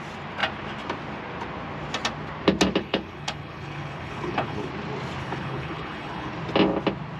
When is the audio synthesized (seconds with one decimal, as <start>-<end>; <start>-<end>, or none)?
2.8-4.7; 5.2-6.3